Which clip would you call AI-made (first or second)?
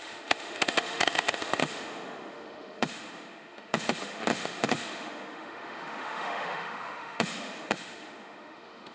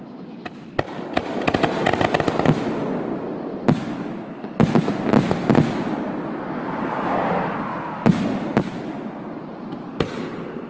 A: first